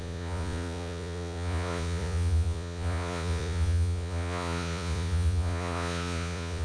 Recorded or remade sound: remade